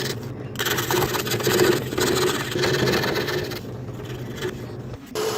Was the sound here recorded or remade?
recorded